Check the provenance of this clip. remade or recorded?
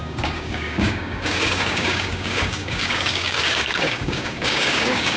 remade